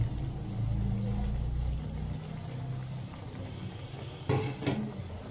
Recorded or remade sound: recorded